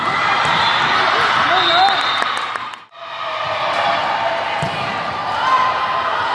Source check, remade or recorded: recorded